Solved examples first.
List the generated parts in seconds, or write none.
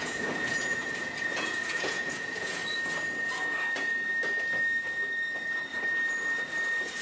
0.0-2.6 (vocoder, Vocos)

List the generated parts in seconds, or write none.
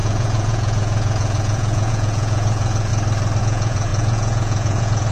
0.0-2.9 (vocoder, Vocos); 3.4-5.1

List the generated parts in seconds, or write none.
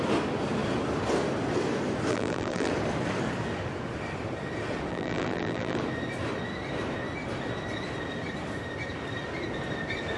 2.1-2.7 (vocoder, BigVGAN v2); 4.9-5.8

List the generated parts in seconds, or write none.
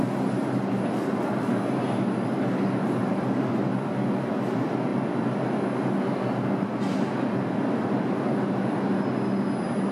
3.0-3.5 (vocoder, BigVGAN v2)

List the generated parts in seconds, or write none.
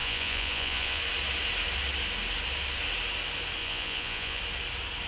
0.0-1.0 (vocoder, Vocos); 3.6-4.4